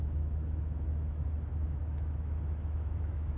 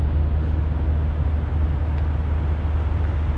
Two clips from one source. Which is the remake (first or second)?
first